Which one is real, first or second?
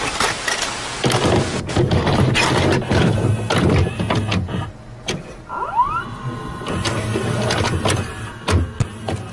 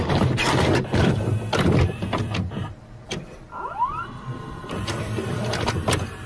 first